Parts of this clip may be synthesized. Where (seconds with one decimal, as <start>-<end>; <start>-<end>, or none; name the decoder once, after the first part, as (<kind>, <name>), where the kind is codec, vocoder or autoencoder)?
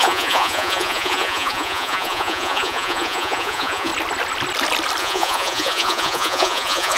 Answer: 0.0-3.9 (vocoder, Vocos); 5.0-7.0